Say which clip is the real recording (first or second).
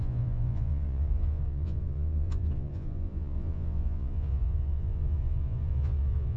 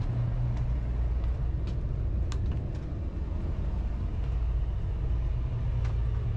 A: second